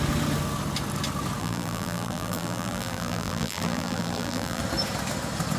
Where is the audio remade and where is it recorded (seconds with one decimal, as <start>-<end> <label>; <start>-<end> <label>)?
0.0-1.4 recorded; 1.4-4.6 remade; 4.6-5.6 recorded